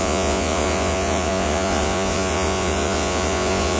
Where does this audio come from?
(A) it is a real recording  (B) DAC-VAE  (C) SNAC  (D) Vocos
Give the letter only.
D